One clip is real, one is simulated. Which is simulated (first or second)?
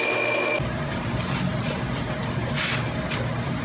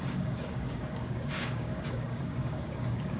second